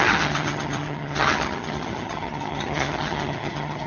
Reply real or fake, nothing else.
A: fake